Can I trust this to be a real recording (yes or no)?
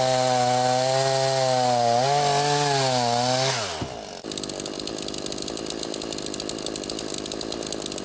yes